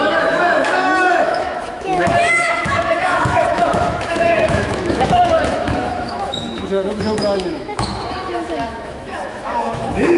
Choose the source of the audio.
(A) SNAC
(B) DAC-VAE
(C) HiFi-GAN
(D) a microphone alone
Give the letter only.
B